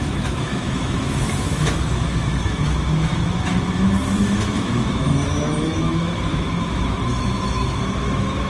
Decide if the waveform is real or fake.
fake